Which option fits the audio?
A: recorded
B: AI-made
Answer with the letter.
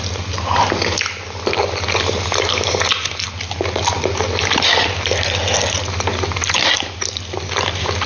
A